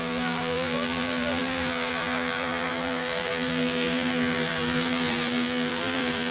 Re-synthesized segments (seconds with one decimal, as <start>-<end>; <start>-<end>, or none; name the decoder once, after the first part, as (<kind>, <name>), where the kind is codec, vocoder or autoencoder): 0.0-6.3 (vocoder, BigVGAN v2)